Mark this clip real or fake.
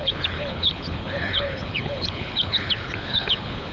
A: fake